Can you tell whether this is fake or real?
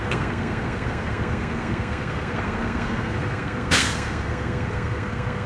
fake